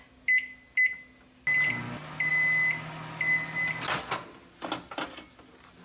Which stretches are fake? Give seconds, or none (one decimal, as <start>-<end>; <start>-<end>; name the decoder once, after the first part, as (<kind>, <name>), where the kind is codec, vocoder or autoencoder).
none